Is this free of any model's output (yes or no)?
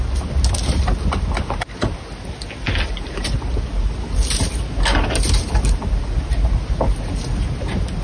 yes